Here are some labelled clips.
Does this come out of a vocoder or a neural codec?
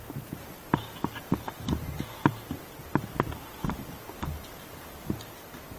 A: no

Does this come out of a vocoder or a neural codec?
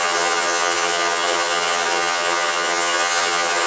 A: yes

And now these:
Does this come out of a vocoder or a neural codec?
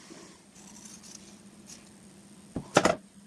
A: no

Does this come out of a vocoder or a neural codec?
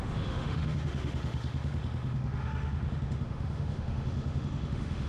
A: yes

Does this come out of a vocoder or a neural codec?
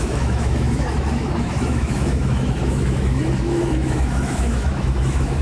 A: yes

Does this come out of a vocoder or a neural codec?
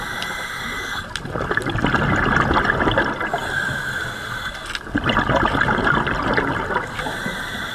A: no